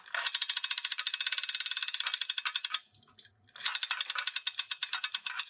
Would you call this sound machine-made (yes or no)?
no